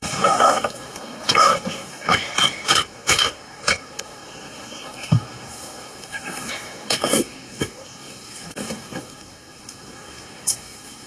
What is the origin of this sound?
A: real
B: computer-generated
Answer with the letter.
B